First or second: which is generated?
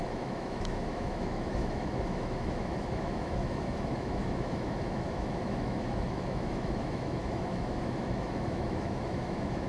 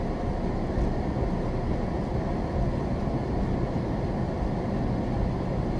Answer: first